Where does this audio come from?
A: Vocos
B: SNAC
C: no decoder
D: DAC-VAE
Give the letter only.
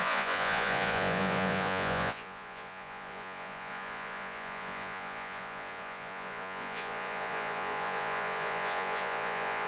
A